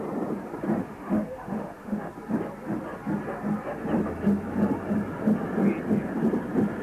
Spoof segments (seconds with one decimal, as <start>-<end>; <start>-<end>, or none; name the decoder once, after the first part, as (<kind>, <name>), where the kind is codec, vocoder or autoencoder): 0.8-2.1 (autoencoder, DAC-VAE)